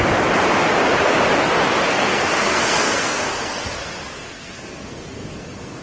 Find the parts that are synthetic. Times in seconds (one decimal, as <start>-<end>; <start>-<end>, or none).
1.9-5.8